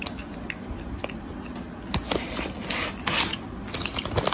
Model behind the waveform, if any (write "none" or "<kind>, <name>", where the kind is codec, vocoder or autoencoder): none